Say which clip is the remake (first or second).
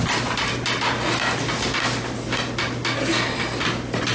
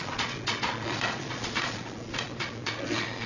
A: second